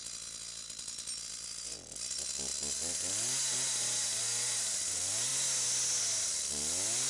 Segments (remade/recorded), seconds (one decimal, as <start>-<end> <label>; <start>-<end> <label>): 0.0-7.1 recorded